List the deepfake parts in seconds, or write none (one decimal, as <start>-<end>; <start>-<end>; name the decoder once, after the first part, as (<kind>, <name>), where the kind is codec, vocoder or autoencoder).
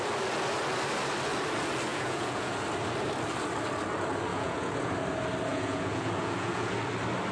1.9-2.5 (vocoder, Vocos); 4.3-4.9; 5.5-6.7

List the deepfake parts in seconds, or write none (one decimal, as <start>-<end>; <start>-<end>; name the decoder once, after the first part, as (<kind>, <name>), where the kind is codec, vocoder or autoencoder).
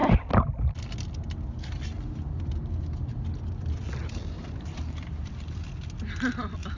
4.0-5.7 (vocoder, BigVGAN v2)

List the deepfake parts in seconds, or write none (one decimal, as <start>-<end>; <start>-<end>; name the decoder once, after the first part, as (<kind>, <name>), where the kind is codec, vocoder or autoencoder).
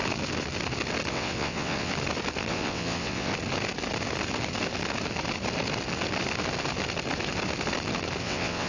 1.1-1.9 (vocoder, WaveNeXt); 2.5-3.3; 8.2-8.7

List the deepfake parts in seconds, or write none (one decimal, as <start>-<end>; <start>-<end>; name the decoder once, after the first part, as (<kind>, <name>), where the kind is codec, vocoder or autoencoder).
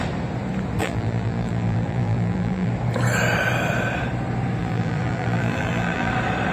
0.8-2.7 (vocoder, BigVGAN v2); 4.6-6.1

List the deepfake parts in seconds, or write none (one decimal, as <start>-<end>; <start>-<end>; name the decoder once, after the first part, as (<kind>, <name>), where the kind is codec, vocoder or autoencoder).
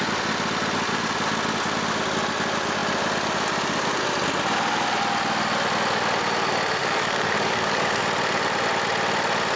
6.8-8.0 (codec, DAC)